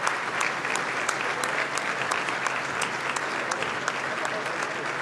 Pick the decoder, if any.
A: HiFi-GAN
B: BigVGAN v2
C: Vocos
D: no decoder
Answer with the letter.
D